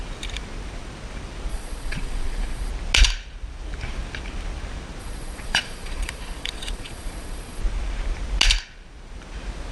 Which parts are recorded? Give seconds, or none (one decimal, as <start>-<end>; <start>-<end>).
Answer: 0.0-1.5; 2.7-5.0; 7.6-9.7

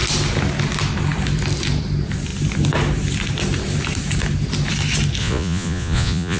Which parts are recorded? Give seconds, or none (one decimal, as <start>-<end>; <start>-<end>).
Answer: 0.0-5.2